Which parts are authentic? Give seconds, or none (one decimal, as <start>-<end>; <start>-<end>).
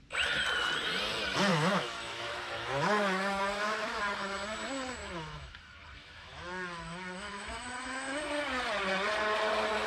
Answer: 0.0-1.5; 4.0-5.0; 5.6-6.0; 8.2-9.9